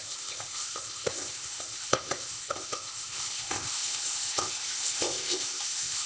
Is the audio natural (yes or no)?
no